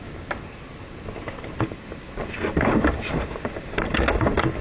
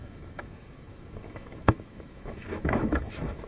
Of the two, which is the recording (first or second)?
first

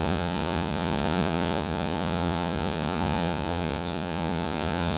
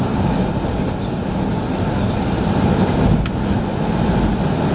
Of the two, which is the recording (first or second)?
second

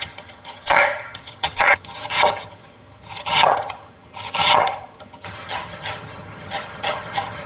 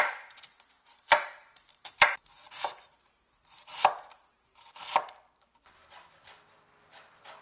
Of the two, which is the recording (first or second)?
second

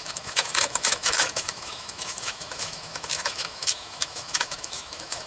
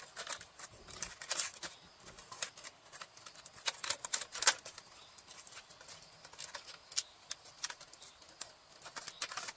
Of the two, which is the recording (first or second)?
second